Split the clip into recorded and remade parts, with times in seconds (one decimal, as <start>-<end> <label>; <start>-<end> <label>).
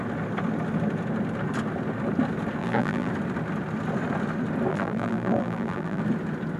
0.0-2.6 recorded; 2.6-3.1 remade; 3.1-4.7 recorded; 4.7-6.0 remade; 6.0-6.6 recorded